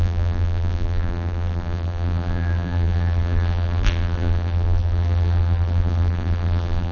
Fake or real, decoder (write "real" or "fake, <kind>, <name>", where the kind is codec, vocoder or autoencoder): fake, vocoder, BigVGAN v2